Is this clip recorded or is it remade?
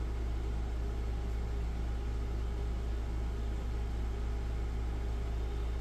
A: recorded